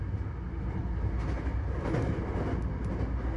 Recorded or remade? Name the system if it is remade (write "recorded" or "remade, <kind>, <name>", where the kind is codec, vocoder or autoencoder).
recorded